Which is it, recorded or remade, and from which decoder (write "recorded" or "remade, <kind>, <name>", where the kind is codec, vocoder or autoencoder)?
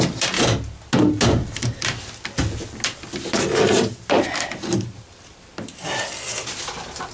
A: recorded